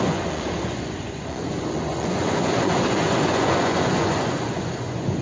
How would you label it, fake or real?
fake